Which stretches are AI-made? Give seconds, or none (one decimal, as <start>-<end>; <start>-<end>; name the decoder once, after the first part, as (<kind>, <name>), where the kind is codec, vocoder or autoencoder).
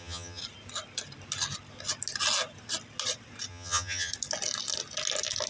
0.0-0.4 (vocoder, HiFi-GAN); 3.5-4.1